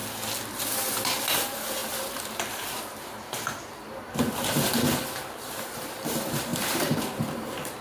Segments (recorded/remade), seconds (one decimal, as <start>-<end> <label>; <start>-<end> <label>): 0.0-0.5 recorded; 0.5-7.8 remade